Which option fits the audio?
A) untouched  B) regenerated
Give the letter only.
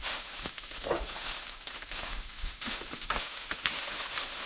B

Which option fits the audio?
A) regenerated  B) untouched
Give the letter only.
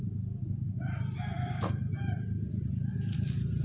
B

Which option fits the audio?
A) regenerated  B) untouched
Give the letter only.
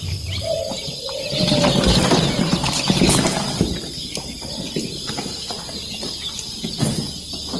B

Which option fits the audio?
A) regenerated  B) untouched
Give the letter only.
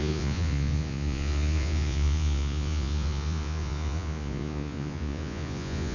A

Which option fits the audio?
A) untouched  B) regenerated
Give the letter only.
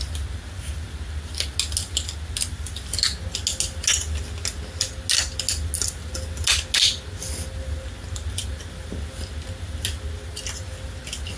A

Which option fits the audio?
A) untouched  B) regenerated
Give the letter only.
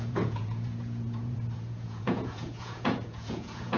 B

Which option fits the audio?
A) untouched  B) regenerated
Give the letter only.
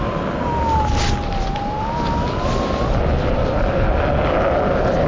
A